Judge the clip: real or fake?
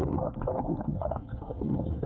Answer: fake